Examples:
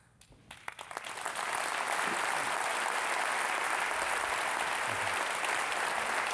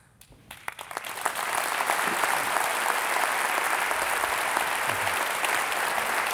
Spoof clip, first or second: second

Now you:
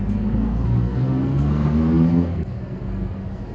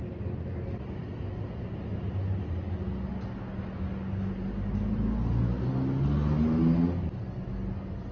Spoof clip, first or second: first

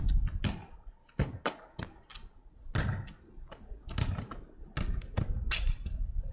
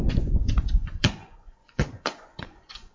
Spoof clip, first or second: second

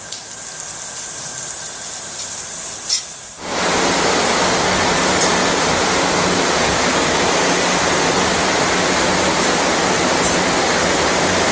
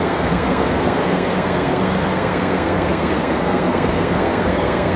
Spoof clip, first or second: second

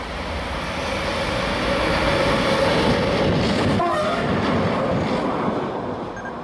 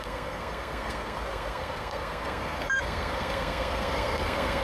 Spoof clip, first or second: second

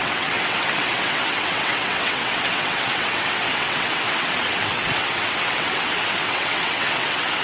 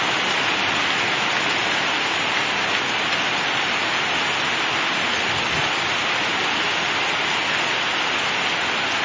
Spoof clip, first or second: first